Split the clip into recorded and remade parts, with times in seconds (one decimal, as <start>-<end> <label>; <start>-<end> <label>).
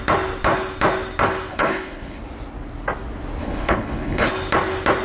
0.0-1.5 recorded; 1.5-2.2 remade; 2.2-3.4 recorded; 3.4-4.3 remade; 4.3-5.0 recorded